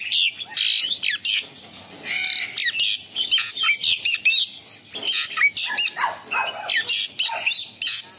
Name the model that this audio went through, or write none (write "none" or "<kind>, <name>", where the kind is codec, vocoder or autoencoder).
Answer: none